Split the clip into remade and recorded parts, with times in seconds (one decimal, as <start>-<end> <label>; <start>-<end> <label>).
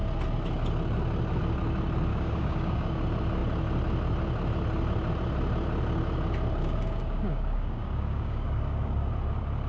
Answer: 0.0-2.1 recorded; 2.1-3.0 remade; 3.0-6.6 recorded; 6.6-9.1 remade; 9.1-9.7 recorded